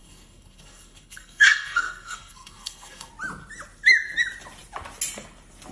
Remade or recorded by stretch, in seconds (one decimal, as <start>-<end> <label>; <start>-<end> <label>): 0.0-3.1 remade; 3.1-5.7 recorded